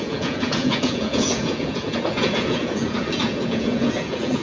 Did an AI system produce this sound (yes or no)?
yes